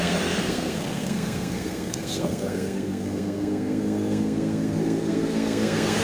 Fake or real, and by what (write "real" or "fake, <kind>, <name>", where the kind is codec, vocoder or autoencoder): fake, codec, SNAC